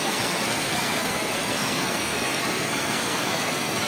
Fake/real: fake